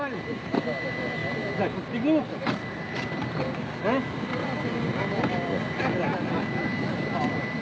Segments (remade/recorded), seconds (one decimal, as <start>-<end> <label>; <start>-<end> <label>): 0.0-7.6 recorded